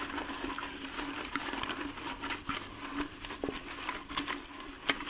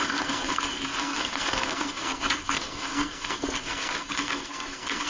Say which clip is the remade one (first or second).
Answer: second